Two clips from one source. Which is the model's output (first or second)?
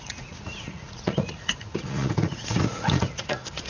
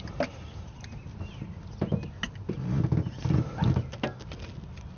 first